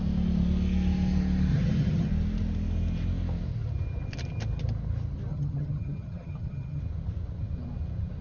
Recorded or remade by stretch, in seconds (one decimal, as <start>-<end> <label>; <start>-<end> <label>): 0.0-1.5 recorded; 1.5-2.1 remade; 2.1-5.3 recorded; 5.3-6.8 remade; 6.8-8.2 recorded